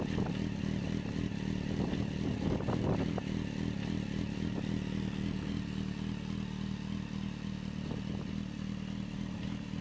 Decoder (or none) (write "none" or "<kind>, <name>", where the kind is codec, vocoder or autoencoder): none